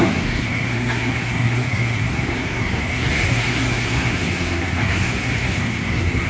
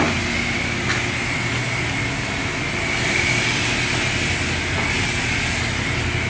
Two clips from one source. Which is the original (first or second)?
second